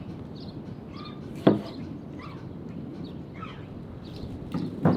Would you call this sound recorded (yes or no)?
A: yes